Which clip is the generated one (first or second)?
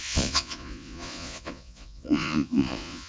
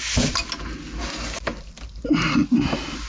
first